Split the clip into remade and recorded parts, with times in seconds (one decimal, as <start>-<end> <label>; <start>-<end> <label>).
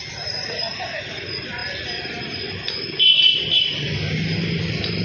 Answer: 0.0-5.0 recorded